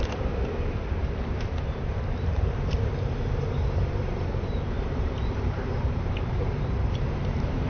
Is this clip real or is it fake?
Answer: fake